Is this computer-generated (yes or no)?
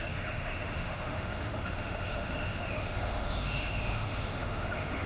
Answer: yes